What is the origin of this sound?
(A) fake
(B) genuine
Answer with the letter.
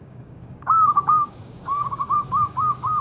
A